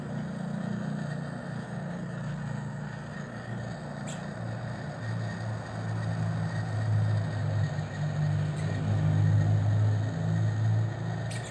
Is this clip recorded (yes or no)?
yes